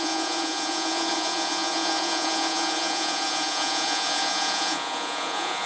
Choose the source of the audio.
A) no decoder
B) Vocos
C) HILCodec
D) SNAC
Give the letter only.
B